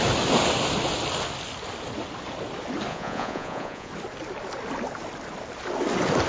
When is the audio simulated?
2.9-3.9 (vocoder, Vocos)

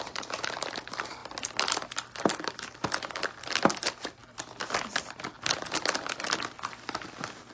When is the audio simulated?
4.2-4.8 (vocoder, BigVGAN v2)

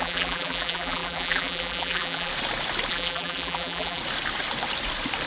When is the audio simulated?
0.0-2.3 (vocoder, BigVGAN v2); 2.9-4.0

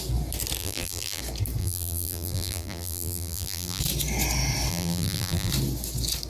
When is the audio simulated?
0.6-1.2 (vocoder, BigVGAN v2); 1.6-3.8; 4.7-5.5

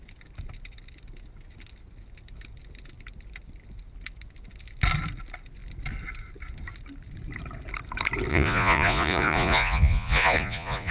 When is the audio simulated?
8.3-10.9 (vocoder, Vocos)

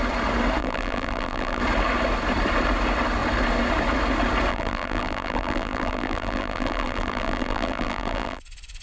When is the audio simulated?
0.6-1.6 (vocoder, BigVGAN v2); 4.5-8.4